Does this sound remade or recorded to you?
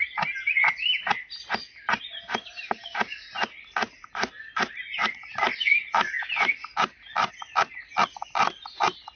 recorded